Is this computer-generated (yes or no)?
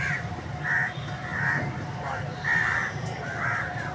yes